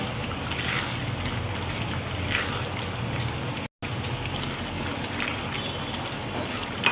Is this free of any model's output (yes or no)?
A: yes